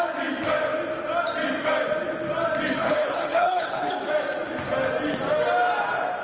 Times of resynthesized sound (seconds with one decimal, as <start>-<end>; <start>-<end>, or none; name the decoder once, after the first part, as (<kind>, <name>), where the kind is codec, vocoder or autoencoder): 2.8-3.9 (codec, HILCodec)